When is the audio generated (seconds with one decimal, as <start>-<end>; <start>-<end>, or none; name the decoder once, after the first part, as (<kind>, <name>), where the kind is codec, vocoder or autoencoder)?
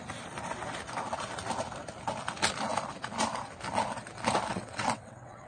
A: 4.5-5.5 (vocoder, WaveNeXt)